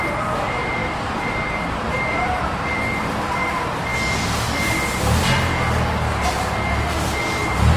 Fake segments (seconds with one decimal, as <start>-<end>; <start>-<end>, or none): 0.0-3.9